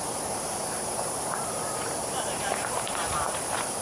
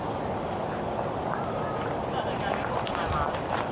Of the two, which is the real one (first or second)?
second